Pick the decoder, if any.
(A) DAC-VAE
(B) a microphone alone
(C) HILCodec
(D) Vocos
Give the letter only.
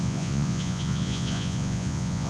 D